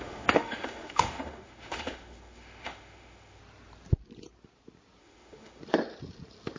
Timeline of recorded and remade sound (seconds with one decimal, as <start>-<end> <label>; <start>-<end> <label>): 0.0-3.4 remade; 3.4-5.0 recorded; 5.0-5.6 remade; 5.6-6.6 recorded